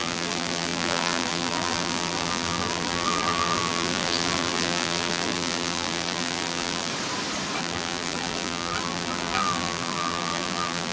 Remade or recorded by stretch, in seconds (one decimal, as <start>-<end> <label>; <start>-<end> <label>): 0.0-6.9 remade; 6.9-7.6 recorded; 7.6-10.9 remade